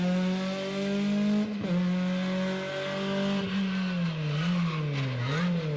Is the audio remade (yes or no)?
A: no